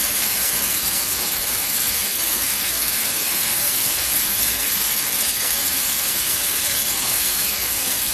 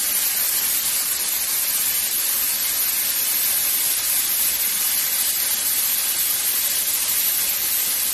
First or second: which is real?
second